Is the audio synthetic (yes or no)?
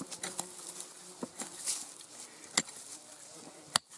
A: no